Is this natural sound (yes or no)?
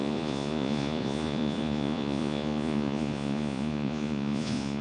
no